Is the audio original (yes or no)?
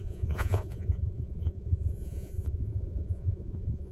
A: no